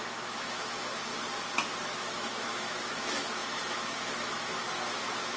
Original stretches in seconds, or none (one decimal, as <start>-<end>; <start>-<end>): 1.1-1.8